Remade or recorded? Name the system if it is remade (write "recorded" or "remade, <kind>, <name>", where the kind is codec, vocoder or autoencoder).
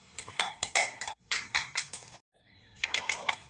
remade, codec, SNAC